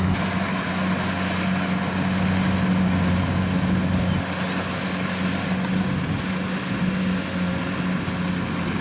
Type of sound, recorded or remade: recorded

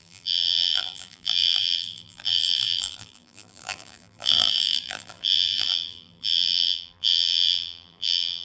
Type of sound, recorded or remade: remade